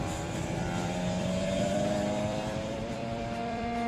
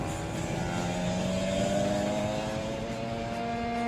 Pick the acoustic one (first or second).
second